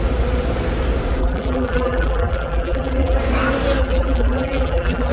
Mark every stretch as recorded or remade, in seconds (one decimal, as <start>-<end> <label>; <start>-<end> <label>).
0.0-1.2 recorded; 1.2-3.2 remade; 3.2-3.8 recorded; 3.8-5.1 remade